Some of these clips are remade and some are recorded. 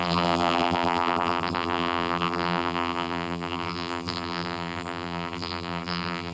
remade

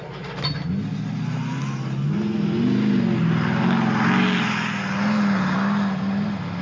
recorded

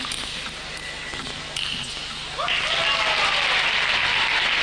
recorded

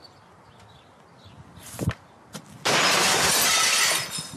recorded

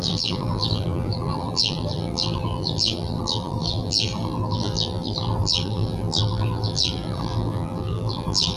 remade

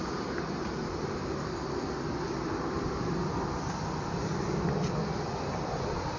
remade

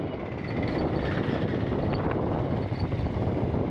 recorded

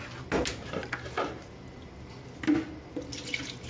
recorded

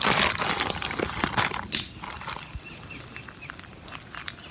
recorded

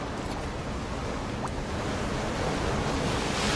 recorded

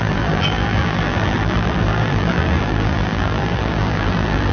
remade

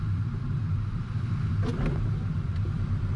remade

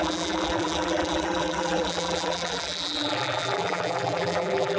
remade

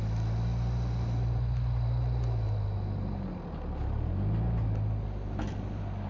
recorded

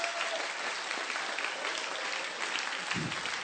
remade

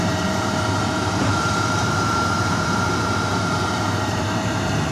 remade